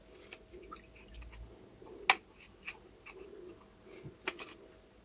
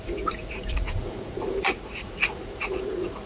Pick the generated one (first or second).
second